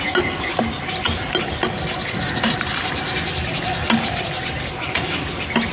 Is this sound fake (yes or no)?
no